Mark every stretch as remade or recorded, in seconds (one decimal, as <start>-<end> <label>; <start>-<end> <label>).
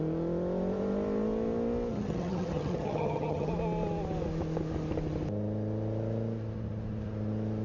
0.0-1.9 recorded; 1.9-3.5 remade; 3.5-7.6 recorded